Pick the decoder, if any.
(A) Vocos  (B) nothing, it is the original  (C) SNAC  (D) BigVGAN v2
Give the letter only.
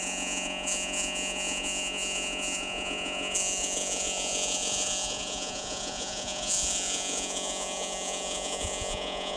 A